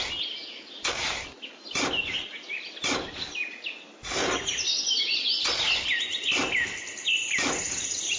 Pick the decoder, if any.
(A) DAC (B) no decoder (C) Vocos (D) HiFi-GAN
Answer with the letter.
B